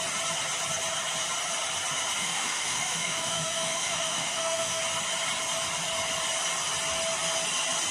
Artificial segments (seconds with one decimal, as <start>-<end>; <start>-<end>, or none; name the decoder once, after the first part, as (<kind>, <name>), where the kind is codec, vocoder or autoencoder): 2.2-4.8 (autoencoder, DAC-VAE)